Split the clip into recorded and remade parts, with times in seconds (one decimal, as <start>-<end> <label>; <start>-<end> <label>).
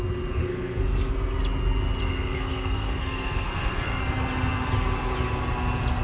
0.0-0.4 recorded; 0.4-1.1 remade; 1.1-2.0 recorded; 2.0-4.0 remade; 4.0-6.0 recorded